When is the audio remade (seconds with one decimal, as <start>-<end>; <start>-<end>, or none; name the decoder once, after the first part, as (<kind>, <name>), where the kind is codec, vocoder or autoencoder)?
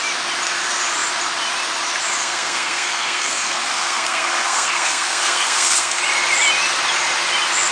2.2-6.0 (codec, SNAC)